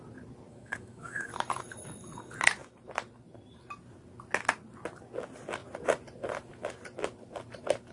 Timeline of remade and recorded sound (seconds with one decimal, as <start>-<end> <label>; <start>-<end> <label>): 0.0-0.5 recorded; 0.5-1.3 remade; 1.3-7.9 recorded